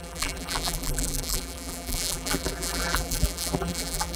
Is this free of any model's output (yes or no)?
no